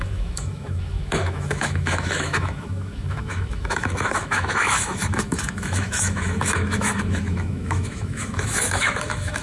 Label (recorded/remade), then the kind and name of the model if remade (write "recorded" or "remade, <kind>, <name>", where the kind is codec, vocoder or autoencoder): remade, autoencoder, DAC-VAE